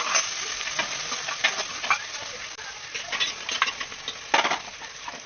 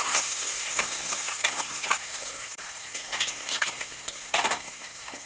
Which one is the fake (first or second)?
second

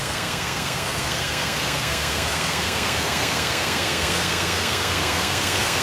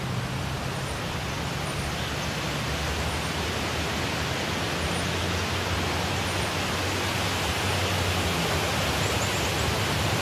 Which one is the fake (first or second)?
first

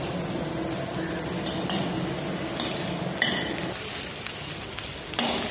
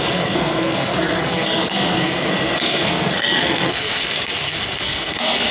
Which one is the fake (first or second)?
second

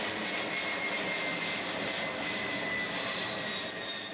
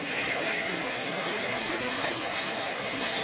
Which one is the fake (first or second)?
second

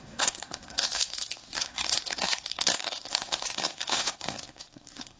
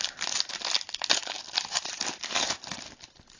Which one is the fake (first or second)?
first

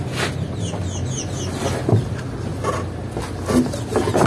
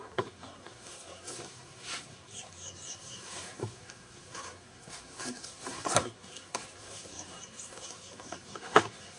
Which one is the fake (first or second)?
second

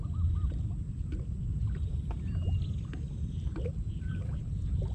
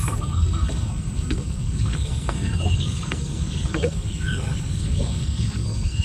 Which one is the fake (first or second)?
second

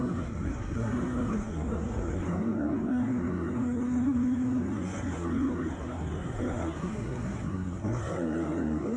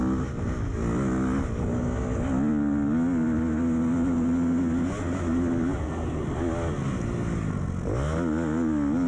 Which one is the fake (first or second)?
first